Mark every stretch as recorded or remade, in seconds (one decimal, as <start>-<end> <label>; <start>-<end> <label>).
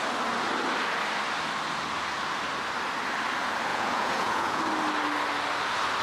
0.0-3.7 recorded; 3.7-4.6 remade; 4.6-6.0 recorded